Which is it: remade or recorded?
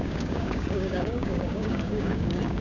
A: remade